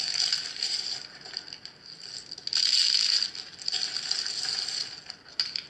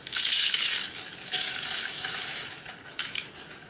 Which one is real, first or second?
first